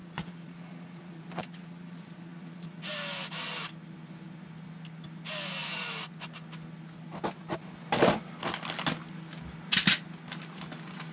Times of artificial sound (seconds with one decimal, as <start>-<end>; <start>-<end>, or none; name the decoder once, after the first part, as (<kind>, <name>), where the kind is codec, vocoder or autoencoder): 0.0-2.8 (vocoder, Vocos)